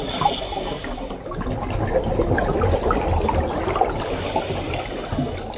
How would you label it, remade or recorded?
recorded